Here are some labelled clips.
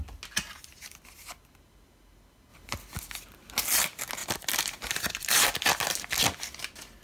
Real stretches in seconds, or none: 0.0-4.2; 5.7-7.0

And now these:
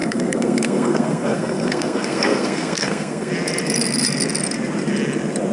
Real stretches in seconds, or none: 3.3-5.5